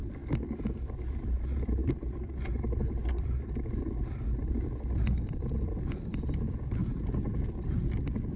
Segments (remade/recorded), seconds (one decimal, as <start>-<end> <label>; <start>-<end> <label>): 0.0-6.8 recorded; 6.8-7.8 remade; 7.8-8.4 recorded